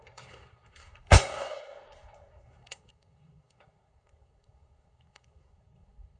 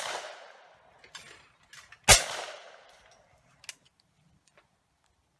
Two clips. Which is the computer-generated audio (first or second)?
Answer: first